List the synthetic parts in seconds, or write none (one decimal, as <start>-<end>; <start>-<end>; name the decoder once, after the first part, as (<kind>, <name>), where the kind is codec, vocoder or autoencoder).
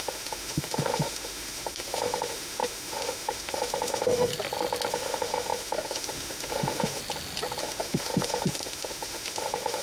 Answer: 0.0-4.3 (autoencoder, DAC-VAE); 4.9-7.0; 7.6-9.8